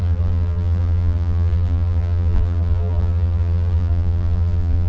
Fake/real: fake